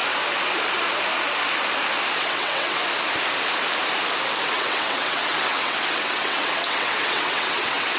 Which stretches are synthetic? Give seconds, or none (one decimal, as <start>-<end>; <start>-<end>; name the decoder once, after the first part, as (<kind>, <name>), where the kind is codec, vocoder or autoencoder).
2.2-2.8 (vocoder, WaveNeXt); 4.5-8.0